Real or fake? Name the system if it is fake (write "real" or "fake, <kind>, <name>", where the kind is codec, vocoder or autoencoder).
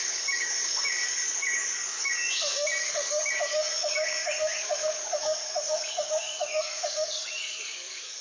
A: fake, codec, DAC